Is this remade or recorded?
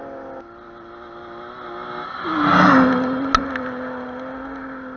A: recorded